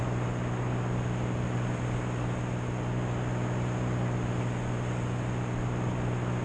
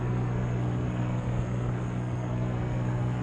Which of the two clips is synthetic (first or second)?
second